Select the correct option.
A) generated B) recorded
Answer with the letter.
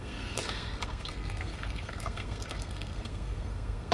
A